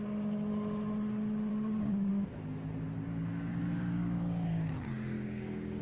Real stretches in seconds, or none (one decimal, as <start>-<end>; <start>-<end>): 0.0-1.5; 2.1-3.1